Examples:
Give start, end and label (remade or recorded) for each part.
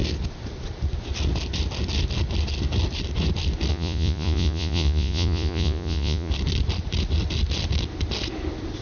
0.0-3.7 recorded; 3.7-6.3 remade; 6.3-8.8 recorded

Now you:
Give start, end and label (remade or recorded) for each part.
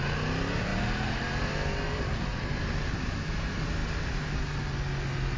0.0-5.4 recorded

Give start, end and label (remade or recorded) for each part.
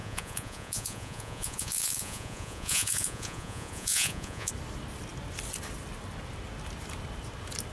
0.0-4.5 remade; 4.5-7.7 recorded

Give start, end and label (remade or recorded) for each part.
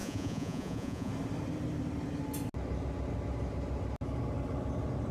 0.0-1.1 remade; 1.1-5.1 recorded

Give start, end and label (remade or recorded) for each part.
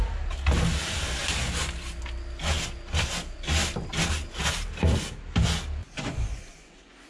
0.0-5.8 recorded; 5.8-7.1 remade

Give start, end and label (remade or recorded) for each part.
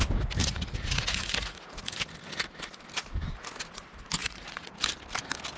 0.0-0.4 recorded; 0.4-1.7 remade; 1.7-4.2 recorded; 4.2-4.7 remade; 4.7-5.6 recorded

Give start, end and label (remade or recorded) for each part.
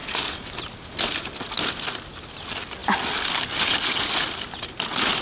0.0-5.2 recorded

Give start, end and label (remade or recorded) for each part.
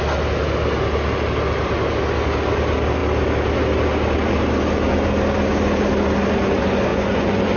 0.0-6.9 recorded; 6.9-7.6 remade